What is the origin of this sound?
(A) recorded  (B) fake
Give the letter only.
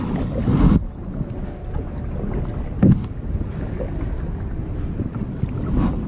A